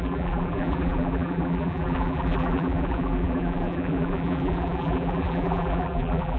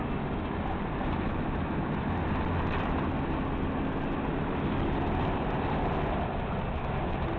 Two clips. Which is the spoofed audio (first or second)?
first